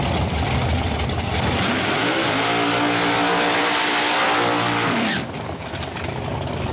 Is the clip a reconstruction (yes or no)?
no